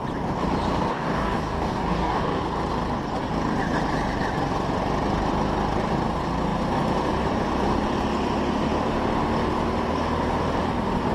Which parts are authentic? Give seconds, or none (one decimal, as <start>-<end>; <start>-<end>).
0.0-0.9; 2.4-11.1